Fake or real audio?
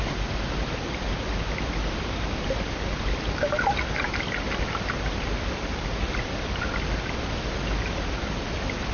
real